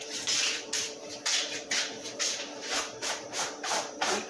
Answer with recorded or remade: remade